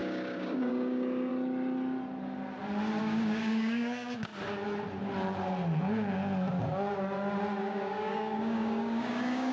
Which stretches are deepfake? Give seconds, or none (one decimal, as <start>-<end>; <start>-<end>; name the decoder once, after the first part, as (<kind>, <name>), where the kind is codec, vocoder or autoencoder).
0.0-1.3 (codec, DAC); 3.0-4.3; 7.6-9.5